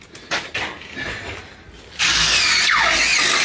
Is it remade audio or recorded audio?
recorded